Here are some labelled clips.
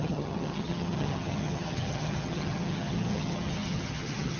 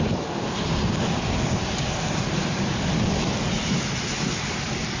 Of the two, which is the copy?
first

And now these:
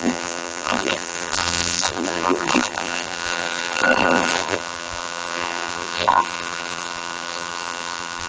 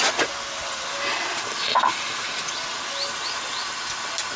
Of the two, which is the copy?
first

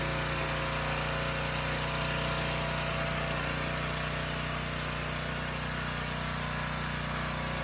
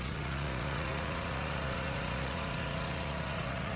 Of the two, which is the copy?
second